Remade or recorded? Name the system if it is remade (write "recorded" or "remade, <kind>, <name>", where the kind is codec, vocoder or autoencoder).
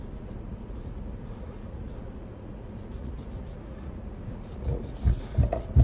remade, vocoder, Vocos